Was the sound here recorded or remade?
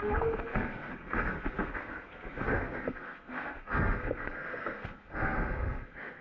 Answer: remade